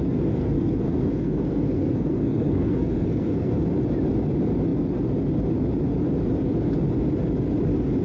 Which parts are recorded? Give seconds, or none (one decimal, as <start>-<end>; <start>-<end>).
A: 0.0-0.4; 3.5-8.0